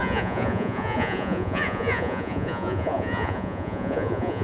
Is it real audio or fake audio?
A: fake